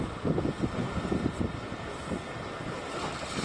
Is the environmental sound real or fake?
real